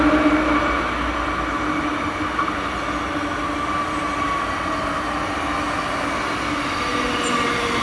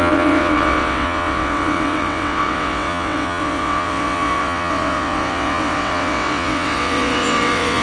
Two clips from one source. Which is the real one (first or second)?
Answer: first